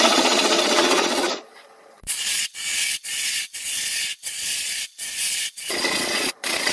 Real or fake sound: fake